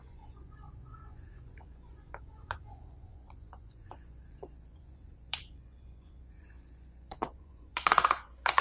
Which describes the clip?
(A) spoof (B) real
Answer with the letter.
A